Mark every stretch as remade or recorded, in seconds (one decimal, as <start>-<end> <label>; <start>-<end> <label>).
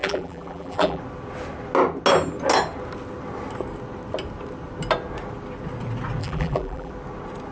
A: 0.0-1.0 remade; 1.0-6.2 recorded; 6.2-6.9 remade; 6.9-7.5 recorded